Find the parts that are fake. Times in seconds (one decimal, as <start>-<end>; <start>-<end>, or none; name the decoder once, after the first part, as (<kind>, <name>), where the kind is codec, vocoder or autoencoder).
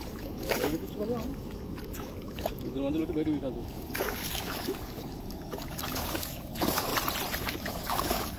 0.0-6.9 (codec, DAC); 7.4-8.4